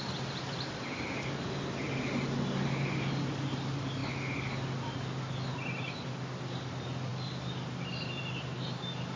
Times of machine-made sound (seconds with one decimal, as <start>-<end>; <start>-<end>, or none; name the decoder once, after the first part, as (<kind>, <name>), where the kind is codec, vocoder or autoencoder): none